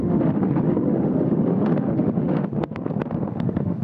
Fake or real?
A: fake